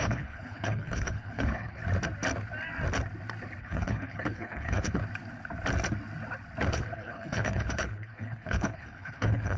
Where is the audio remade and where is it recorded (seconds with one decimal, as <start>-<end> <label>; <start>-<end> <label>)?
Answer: 0.0-1.8 remade; 1.8-3.6 recorded; 3.6-5.0 remade; 5.0-6.7 recorded; 6.7-9.6 remade

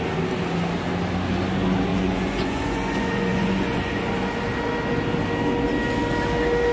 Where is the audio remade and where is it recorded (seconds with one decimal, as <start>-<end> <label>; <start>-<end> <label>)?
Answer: 0.0-1.9 recorded; 1.9-4.1 remade; 4.1-6.7 recorded

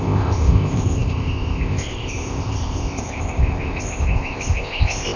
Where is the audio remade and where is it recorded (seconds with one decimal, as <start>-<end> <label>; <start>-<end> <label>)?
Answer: 0.0-5.2 remade

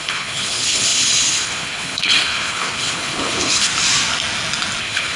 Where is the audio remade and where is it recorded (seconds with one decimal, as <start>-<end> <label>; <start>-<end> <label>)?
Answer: 0.0-3.7 remade; 3.7-4.8 recorded; 4.8-5.2 remade

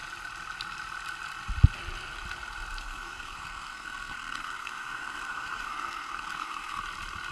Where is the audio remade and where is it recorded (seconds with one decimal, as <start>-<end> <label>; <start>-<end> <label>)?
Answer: 0.0-2.8 recorded; 2.8-6.8 remade; 6.8-7.3 recorded

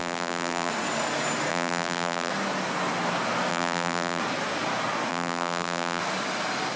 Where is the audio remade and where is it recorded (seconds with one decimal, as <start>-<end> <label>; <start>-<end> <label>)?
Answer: 0.0-0.7 remade; 0.7-1.5 recorded; 1.5-2.3 remade; 2.3-3.5 recorded; 3.5-4.2 remade; 4.2-5.1 recorded; 5.1-6.0 remade; 6.0-6.8 recorded